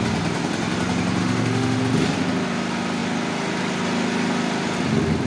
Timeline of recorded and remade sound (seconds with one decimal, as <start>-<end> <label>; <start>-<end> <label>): 0.0-1.2 recorded; 1.2-1.8 remade; 1.8-5.3 recorded